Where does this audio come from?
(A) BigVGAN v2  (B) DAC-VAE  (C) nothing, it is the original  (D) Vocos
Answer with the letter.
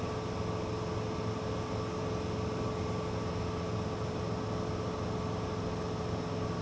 C